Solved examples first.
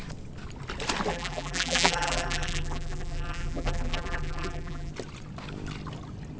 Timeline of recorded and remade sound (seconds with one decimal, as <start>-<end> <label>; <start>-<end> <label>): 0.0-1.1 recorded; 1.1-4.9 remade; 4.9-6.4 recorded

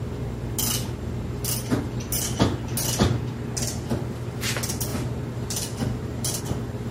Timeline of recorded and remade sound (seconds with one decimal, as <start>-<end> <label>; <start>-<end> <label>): 0.0-4.9 recorded; 4.9-6.4 remade; 6.4-6.9 recorded

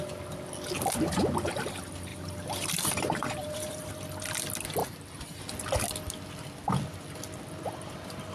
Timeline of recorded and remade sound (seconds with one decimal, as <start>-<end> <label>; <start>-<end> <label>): 0.0-2.1 recorded; 2.1-3.9 remade; 3.9-4.8 recorded; 4.8-5.4 remade; 5.4-8.3 recorded

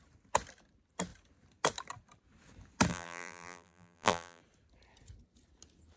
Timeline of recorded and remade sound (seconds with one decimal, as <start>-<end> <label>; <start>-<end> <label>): 0.0-2.9 recorded; 2.9-4.4 remade; 4.4-6.0 recorded